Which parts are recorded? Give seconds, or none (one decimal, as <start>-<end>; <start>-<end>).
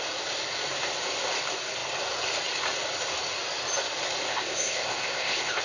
0.0-4.3